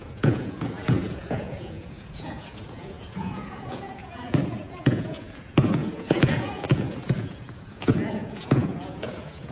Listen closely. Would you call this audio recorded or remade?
remade